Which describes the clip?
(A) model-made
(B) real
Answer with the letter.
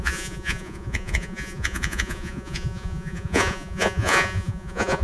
A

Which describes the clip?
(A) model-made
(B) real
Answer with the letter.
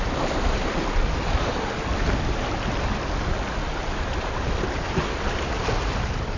B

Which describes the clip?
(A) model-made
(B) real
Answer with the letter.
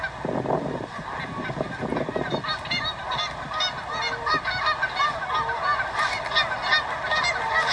B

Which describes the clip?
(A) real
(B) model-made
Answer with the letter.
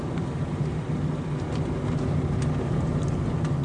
A